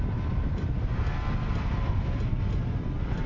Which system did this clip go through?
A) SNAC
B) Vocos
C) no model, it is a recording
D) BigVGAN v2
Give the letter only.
C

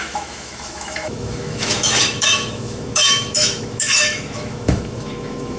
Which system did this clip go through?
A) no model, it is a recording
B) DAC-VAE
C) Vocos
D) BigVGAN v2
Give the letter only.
B